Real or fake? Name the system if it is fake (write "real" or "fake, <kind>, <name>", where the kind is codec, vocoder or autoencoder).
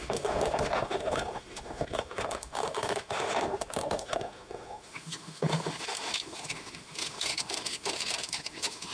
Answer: fake, autoencoder, DAC-VAE